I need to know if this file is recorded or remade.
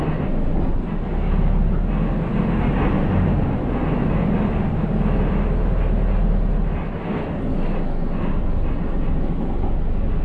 recorded